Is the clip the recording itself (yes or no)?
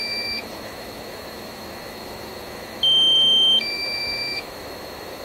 no